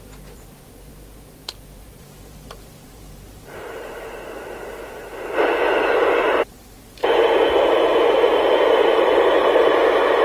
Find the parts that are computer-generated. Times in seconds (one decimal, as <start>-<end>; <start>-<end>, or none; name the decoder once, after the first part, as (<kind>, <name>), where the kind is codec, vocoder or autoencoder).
0.0-10.2 (vocoder, BigVGAN v2)